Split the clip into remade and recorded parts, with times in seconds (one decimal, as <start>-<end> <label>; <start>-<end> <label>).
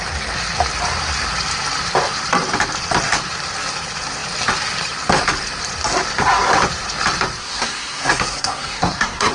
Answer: 0.0-7.4 recorded; 7.4-9.3 remade